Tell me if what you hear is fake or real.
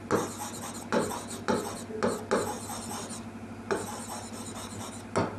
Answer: real